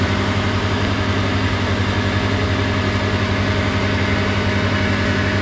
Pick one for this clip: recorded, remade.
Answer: recorded